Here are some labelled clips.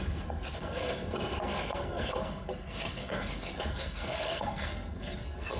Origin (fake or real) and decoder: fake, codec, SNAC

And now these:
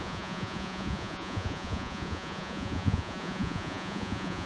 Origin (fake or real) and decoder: fake, vocoder, Vocos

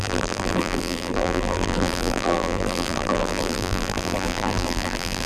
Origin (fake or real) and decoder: fake, vocoder, BigVGAN v2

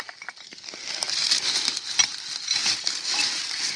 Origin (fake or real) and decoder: real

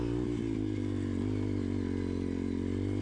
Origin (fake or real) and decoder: real